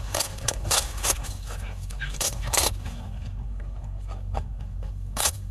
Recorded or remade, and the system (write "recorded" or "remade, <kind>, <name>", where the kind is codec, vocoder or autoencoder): remade, codec, SNAC